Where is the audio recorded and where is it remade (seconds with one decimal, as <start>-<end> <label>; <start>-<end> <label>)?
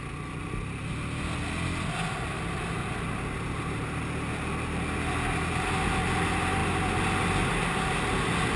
0.0-8.6 recorded